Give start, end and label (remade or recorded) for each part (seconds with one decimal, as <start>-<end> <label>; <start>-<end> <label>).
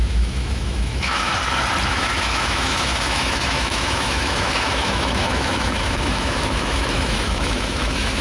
0.0-1.3 remade; 1.3-1.9 recorded; 1.9-8.2 remade